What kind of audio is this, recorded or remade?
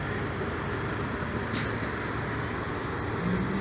recorded